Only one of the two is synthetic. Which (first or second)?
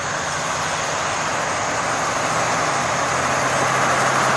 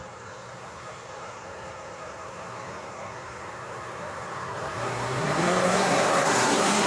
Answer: second